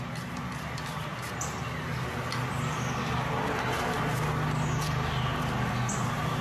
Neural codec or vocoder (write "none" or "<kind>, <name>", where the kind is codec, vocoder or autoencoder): none